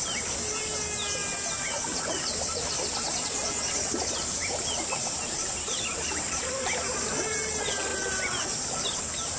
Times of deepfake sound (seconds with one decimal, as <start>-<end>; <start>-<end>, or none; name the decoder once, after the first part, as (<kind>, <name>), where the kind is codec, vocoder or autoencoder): 1.2-6.3 (vocoder, BigVGAN v2)